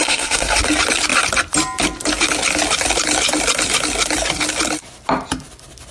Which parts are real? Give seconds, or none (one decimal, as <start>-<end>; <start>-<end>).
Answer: 0.6-5.9